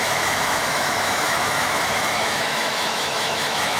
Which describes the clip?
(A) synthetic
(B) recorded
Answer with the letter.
A